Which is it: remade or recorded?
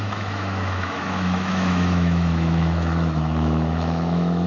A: remade